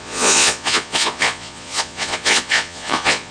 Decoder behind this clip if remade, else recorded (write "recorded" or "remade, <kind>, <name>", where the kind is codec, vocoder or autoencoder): remade, vocoder, Vocos